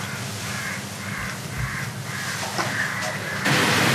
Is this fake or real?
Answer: real